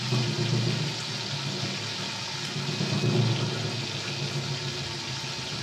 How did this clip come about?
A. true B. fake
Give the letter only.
A